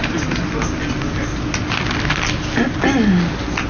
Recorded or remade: recorded